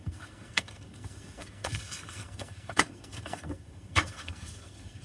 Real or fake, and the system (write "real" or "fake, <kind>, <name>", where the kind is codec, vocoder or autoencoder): fake, codec, SNAC